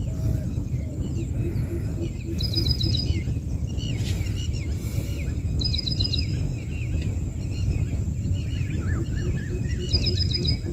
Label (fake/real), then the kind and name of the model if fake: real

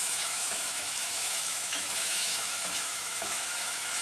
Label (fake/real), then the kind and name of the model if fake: fake, autoencoder, DAC-VAE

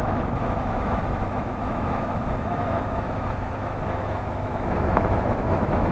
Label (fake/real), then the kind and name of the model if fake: fake, autoencoder, DAC-VAE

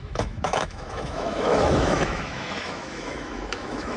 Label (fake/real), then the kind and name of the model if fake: fake, autoencoder, DAC-VAE